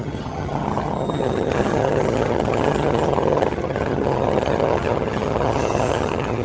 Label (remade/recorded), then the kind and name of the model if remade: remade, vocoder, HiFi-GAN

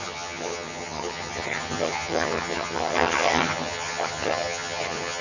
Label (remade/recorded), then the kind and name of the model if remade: remade, vocoder, HiFi-GAN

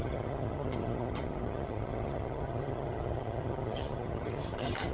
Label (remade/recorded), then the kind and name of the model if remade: remade, vocoder, HiFi-GAN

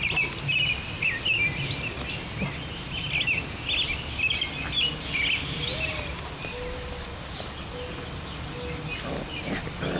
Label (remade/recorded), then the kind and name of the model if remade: recorded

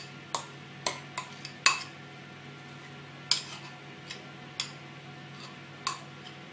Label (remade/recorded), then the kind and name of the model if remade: recorded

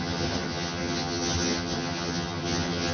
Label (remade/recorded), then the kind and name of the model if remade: remade, vocoder, HiFi-GAN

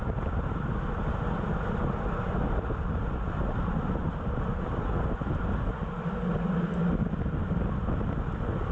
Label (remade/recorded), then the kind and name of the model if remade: recorded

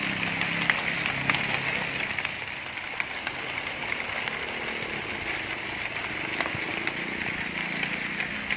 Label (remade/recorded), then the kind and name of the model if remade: recorded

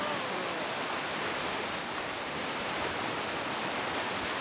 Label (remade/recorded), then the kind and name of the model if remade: recorded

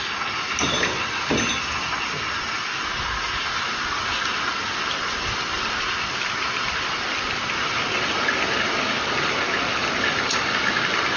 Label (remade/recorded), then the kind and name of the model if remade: recorded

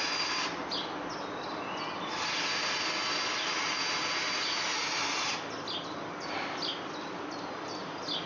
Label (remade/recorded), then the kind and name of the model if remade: recorded